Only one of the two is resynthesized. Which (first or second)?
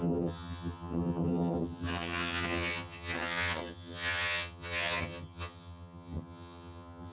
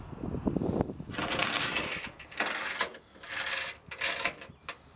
first